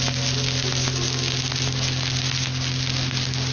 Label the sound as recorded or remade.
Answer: recorded